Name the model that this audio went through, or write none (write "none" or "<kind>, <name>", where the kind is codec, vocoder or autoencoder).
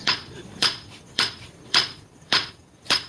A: vocoder, Vocos